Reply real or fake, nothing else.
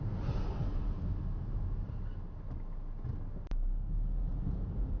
real